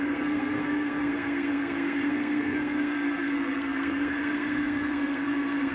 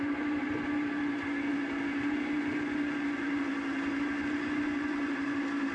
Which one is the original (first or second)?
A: second